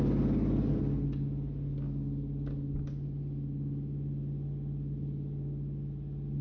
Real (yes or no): yes